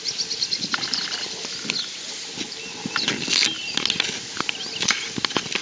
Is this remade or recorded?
recorded